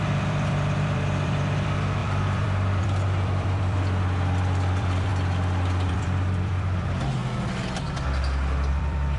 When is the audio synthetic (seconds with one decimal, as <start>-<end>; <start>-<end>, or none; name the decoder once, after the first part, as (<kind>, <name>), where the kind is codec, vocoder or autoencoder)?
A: 0.0-5.1 (vocoder, BigVGAN v2); 5.9-7.2; 8.7-9.2